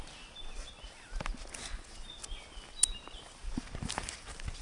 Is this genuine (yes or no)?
yes